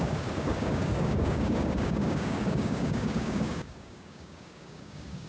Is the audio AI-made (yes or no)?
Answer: yes